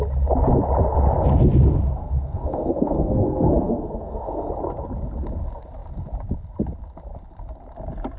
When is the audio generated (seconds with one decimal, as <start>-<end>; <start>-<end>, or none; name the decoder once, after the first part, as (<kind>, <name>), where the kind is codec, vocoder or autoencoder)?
2.0-4.5 (codec, SNAC)